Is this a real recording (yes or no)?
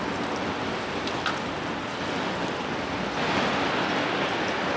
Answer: yes